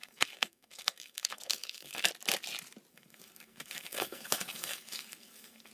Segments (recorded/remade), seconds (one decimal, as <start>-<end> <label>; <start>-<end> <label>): 0.0-2.1 remade; 2.1-2.9 recorded; 2.9-5.7 remade